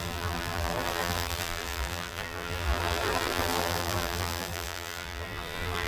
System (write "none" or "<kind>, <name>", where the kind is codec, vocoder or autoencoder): vocoder, BigVGAN v2